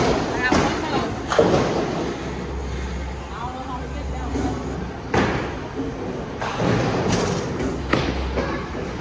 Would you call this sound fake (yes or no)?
no